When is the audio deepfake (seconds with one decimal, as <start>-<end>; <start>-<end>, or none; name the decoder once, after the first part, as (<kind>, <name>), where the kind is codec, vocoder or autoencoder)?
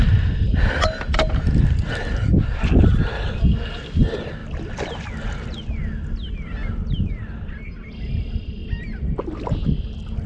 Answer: 6.6-7.1 (vocoder, BigVGAN v2)